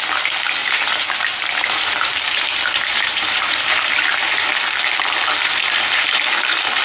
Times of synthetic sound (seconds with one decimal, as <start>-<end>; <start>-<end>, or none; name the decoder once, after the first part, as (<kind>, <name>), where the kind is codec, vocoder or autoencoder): 0.6-4.6 (vocoder, BigVGAN v2); 5.4-6.8